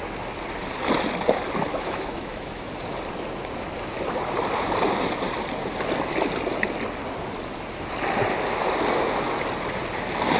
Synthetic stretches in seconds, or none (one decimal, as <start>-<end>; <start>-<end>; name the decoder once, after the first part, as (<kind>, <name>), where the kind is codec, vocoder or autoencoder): 1.7-2.7 (autoencoder, DAC-VAE)